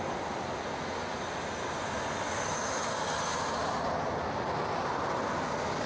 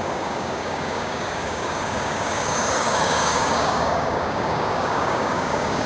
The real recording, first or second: first